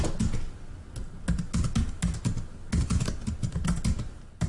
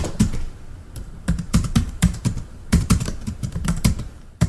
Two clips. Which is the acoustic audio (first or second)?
first